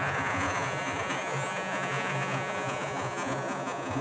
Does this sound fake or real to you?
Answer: fake